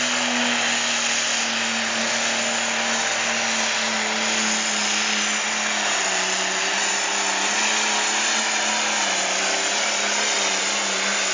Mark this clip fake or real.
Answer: real